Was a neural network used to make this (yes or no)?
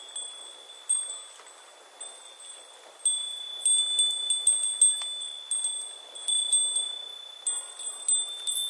no